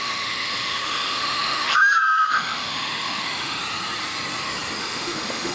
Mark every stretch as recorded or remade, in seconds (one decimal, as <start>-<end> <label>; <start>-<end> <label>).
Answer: 0.0-3.6 remade; 3.6-4.8 recorded; 4.8-5.5 remade